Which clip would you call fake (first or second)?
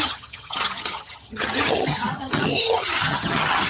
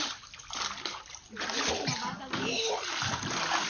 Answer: first